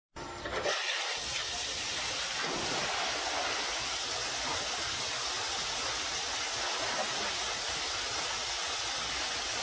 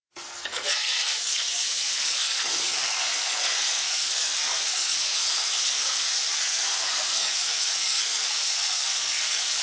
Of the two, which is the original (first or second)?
first